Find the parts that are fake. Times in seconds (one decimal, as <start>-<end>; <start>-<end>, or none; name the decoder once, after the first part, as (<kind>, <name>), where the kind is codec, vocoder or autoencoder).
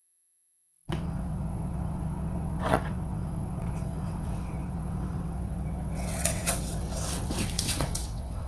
0.0-8.5 (vocoder, WaveNeXt)